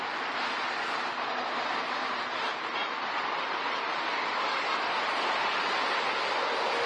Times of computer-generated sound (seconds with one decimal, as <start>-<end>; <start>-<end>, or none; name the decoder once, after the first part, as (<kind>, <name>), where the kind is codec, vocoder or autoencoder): 2.0-6.1 (vocoder, BigVGAN v2)